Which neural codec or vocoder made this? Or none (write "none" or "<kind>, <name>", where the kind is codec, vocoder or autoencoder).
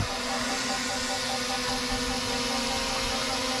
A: none